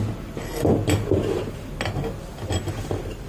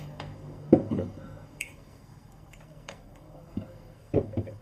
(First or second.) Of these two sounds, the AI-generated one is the second